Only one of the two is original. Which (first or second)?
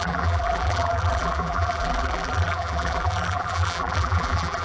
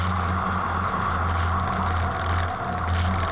second